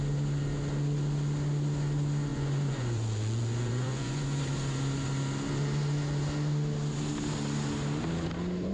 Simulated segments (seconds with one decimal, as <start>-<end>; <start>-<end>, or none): 2.3-4.4

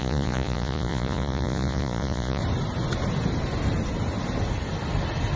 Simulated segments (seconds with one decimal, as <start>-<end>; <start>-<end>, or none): 0.0-2.4

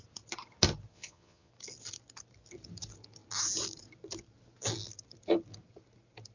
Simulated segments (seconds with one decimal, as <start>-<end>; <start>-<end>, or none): 0.9-1.5

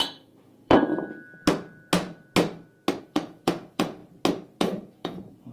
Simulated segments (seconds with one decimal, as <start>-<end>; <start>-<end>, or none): 0.0-0.9; 3.0-4.0; 4.6-5.5